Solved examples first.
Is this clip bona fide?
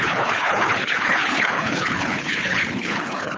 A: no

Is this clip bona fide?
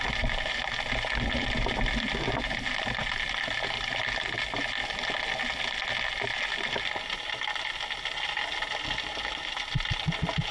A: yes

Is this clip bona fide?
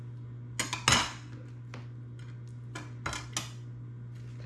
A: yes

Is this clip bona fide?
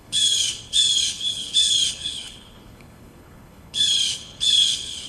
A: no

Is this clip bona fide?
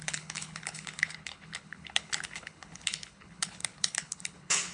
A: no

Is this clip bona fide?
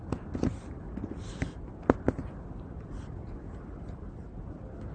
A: yes